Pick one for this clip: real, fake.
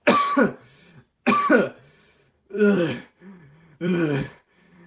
fake